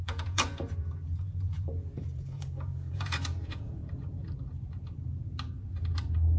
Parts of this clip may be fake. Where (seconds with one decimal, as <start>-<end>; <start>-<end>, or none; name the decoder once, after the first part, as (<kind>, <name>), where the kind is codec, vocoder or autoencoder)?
0.0-3.8 (vocoder, Vocos)